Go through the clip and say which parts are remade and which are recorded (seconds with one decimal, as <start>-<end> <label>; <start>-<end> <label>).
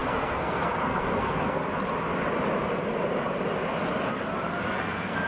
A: 0.0-1.6 remade; 1.6-4.8 recorded; 4.8-5.3 remade